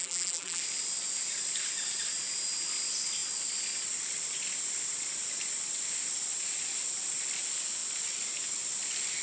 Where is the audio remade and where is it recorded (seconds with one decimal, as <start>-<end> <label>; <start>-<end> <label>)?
0.0-0.6 remade; 0.6-9.2 recorded